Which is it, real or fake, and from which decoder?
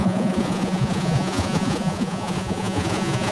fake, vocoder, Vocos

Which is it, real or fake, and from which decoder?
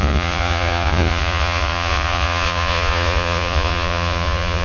fake, vocoder, Vocos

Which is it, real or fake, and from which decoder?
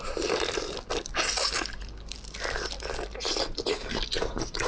real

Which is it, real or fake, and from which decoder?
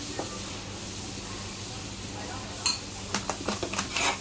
real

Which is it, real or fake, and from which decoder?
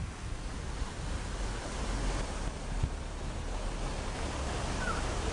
real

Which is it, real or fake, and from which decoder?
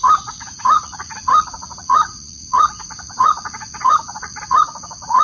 fake, vocoder, Vocos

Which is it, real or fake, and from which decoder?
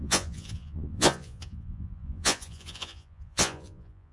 fake, vocoder, Vocos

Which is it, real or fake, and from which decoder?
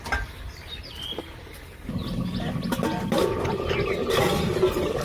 real